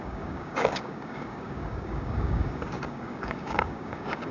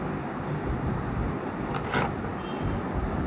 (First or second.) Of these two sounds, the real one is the second